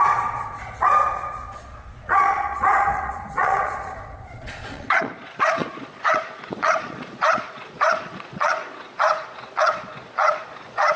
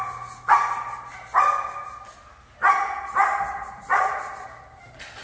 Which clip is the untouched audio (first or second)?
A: second